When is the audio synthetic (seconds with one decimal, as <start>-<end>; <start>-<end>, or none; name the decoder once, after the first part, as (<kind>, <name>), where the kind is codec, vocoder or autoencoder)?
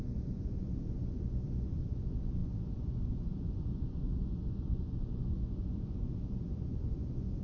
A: 0.0-7.4 (vocoder, Vocos)